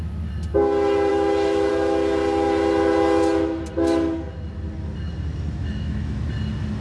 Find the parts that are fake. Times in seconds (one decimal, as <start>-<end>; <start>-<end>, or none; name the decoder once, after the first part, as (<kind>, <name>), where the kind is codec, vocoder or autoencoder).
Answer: 1.1-1.7 (autoencoder, DAC-VAE); 5.6-6.2